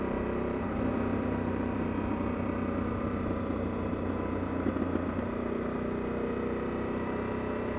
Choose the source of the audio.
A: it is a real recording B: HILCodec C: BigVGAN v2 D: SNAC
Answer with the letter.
C